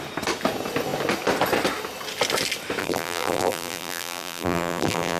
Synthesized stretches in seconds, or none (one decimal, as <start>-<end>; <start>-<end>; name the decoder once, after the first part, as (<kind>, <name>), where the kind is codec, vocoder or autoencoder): 2.8-5.2 (vocoder, BigVGAN v2)